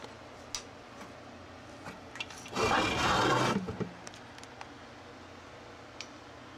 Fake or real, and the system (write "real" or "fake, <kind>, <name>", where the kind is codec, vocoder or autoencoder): real